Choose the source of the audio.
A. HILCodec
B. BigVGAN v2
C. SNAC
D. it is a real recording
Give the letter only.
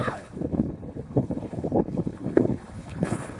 A